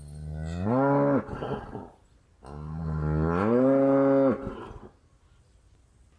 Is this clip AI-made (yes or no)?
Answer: no